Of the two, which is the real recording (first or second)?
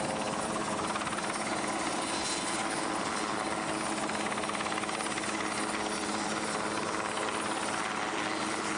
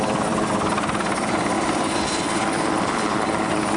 first